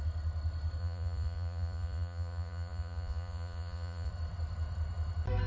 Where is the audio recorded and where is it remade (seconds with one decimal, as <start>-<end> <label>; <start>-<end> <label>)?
0.0-0.8 recorded; 0.8-4.1 remade; 4.1-5.5 recorded